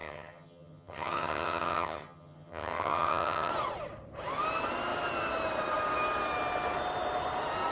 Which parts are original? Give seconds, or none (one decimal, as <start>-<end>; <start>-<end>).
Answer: 3.5-7.7